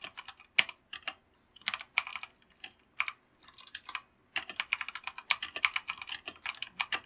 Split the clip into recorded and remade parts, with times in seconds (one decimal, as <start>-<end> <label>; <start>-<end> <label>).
0.0-7.1 recorded